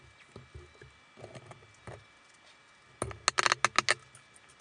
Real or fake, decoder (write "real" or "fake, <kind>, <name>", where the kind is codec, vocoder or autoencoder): real